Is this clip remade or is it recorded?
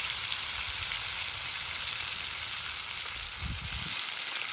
recorded